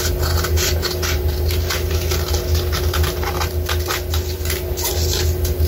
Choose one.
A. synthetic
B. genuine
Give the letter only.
B